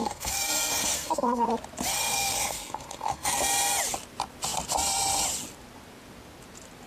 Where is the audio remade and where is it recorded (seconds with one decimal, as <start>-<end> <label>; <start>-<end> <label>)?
0.0-1.5 remade; 1.5-1.9 recorded; 1.9-3.4 remade; 3.4-6.9 recorded